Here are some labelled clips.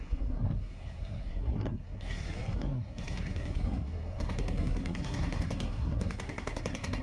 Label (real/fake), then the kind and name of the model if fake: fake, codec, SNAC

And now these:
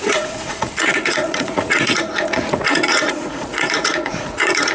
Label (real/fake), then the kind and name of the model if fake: fake, vocoder, Vocos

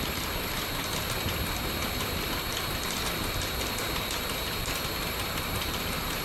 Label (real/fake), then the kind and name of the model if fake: real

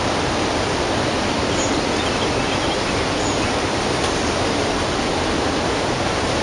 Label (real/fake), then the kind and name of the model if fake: real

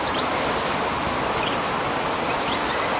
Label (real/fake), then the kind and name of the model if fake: real